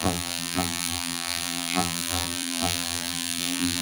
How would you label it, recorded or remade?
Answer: remade